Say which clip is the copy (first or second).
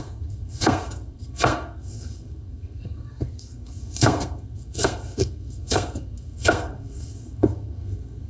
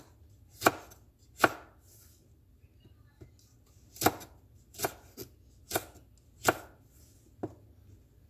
first